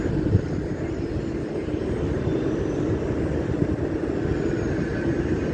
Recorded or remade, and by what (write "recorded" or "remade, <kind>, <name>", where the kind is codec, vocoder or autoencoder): recorded